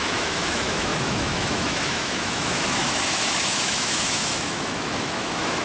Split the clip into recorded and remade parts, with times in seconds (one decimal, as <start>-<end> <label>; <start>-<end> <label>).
0.0-5.6 remade